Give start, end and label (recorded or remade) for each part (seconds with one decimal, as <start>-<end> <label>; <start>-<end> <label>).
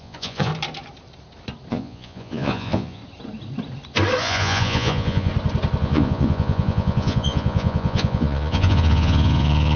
0.0-0.5 remade; 0.5-1.7 recorded; 1.7-3.0 remade; 3.0-4.2 recorded; 4.2-5.3 remade; 5.3-5.8 recorded; 5.8-9.8 remade